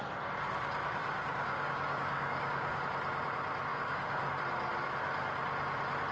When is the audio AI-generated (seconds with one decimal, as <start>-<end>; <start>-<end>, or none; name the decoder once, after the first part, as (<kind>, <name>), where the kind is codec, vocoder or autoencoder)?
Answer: 1.0-2.8 (codec, DAC); 3.7-4.3